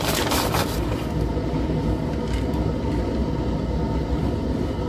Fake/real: real